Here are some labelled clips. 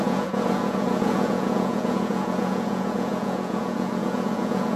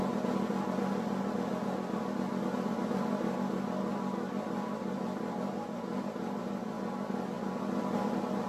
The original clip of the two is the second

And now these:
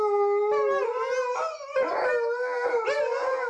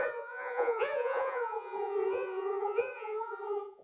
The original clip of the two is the first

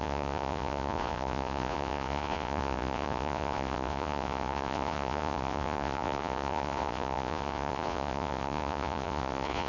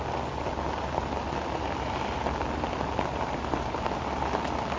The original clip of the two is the second